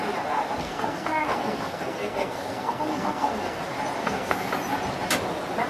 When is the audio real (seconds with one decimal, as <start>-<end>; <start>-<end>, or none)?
0.0-0.6; 3.6-4.0; 4.5-5.7